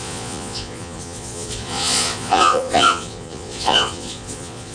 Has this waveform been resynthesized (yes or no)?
yes